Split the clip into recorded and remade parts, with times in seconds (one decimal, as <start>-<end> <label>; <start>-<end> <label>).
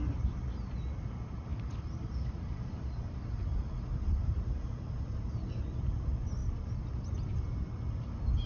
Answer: 0.0-1.5 recorded; 1.5-5.5 remade; 5.5-8.5 recorded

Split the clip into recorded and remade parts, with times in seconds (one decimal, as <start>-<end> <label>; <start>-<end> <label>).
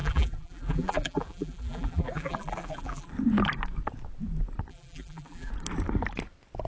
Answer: 0.0-3.1 remade; 3.1-4.7 recorded; 4.7-5.5 remade; 5.5-6.7 recorded